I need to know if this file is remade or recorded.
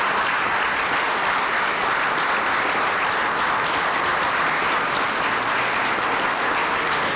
recorded